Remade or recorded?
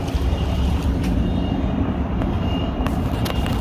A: recorded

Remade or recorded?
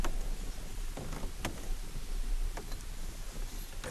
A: recorded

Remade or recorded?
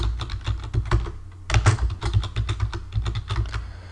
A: recorded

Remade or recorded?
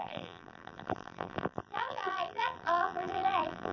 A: remade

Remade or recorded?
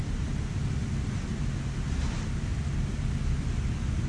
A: recorded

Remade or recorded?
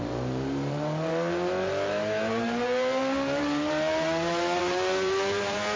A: remade